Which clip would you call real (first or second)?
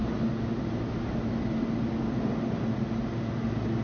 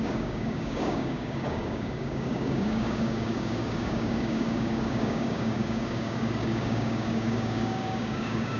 first